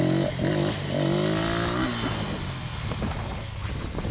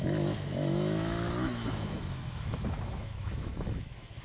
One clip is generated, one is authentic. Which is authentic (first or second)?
first